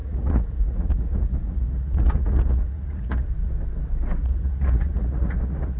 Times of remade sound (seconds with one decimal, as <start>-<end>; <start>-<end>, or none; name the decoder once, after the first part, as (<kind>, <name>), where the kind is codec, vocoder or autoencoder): 0.0-3.5 (vocoder, Vocos); 4.2-5.8